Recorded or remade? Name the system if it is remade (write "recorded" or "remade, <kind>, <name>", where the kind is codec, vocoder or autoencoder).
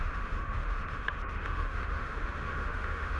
remade, autoencoder, DAC-VAE